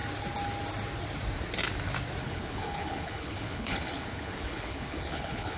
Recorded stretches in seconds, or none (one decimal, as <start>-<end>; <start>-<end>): 0.0-2.2

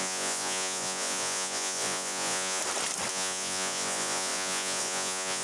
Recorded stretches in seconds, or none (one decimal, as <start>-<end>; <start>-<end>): 2.6-3.1

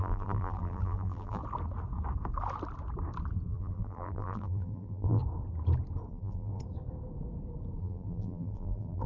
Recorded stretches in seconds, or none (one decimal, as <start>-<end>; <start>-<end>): 1.4-3.5; 5.2-6.1; 6.5-7.8

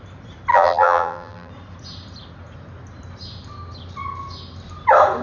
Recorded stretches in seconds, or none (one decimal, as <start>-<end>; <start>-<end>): 0.0-0.5; 1.5-5.2

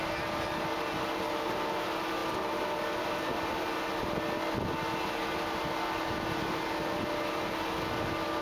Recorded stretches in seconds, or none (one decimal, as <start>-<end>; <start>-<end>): 0.0-8.4

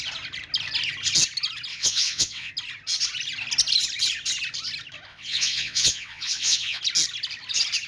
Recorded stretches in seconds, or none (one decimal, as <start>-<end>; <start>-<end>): 0.0-1.7; 2.5-5.1; 6.8-7.9